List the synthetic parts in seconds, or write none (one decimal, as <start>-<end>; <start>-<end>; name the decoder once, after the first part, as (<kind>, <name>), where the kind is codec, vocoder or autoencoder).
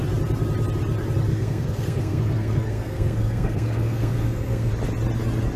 1.3-4.7 (codec, SNAC)